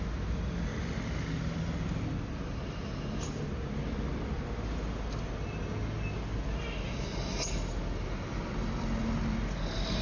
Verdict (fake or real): real